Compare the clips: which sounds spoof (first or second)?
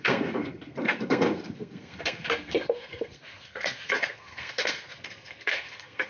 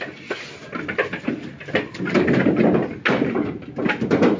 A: first